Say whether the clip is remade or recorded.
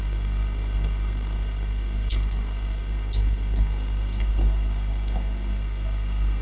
remade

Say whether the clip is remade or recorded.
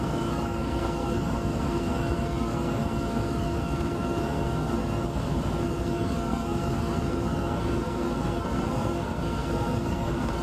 remade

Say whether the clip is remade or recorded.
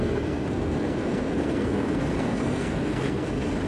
remade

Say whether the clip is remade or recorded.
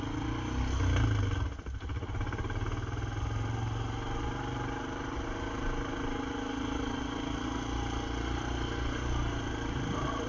recorded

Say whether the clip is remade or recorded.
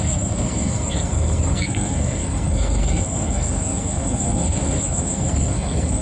remade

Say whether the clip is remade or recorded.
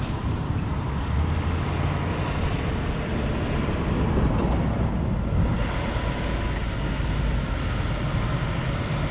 recorded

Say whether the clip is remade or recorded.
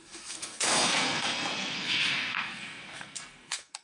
remade